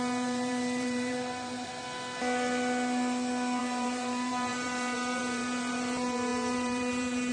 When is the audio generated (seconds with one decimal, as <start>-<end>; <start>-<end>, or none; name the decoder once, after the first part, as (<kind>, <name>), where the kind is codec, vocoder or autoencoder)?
0.0-1.7 (vocoder, BigVGAN v2); 3.6-7.3